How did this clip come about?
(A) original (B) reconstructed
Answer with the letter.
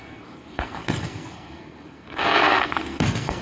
B